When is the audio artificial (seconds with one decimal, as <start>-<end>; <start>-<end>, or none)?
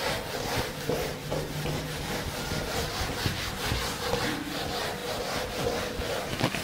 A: none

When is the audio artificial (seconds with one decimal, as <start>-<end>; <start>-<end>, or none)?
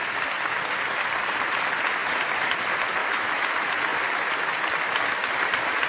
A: 3.0-3.5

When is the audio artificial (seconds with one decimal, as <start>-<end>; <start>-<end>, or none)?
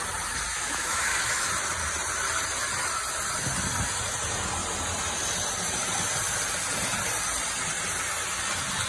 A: 0.5-1.5